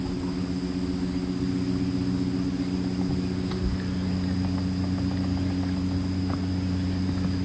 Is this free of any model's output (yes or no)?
yes